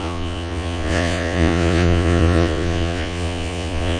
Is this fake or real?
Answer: fake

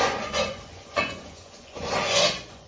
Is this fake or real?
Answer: fake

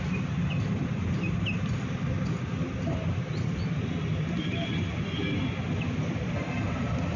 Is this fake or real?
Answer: real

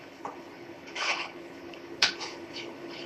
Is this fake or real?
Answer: fake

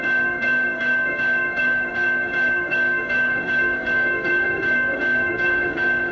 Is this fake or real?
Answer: fake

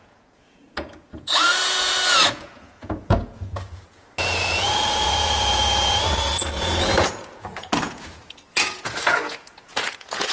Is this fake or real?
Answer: fake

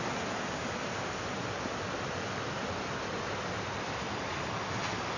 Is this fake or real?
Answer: real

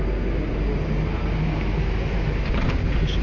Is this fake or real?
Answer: real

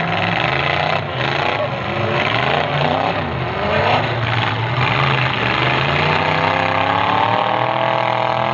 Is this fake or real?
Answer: real